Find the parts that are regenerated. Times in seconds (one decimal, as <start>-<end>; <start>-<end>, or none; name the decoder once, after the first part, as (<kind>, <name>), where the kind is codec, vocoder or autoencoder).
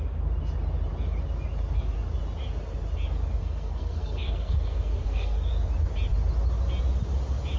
3.4-5.5 (codec, SNAC)